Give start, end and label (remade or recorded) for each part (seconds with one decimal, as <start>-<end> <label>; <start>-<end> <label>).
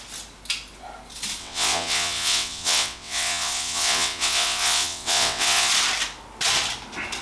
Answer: 0.0-1.4 recorded; 1.4-5.7 remade; 5.7-7.2 recorded